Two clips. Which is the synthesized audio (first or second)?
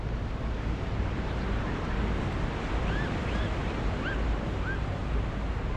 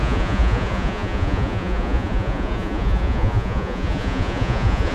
second